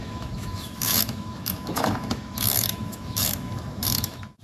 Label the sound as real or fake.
fake